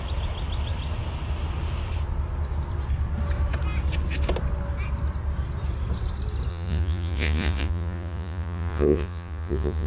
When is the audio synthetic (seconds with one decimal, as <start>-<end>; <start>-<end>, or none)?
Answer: 6.5-9.9